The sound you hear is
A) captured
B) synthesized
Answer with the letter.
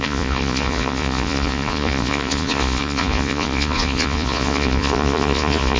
B